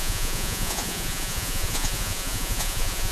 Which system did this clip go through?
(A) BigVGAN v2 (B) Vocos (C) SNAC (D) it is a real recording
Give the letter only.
B